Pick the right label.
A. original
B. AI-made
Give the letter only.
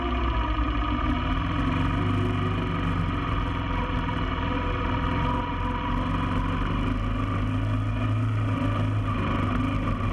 A